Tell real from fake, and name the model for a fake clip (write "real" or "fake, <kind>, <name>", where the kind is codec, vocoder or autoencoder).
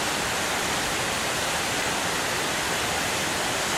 real